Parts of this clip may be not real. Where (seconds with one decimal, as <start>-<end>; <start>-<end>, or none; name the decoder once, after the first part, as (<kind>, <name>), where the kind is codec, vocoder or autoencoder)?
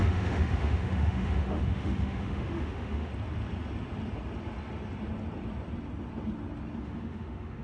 0.0-3.1 (autoencoder, DAC-VAE); 6.8-7.6